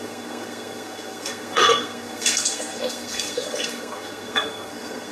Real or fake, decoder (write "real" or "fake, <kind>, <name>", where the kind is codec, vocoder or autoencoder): fake, codec, SNAC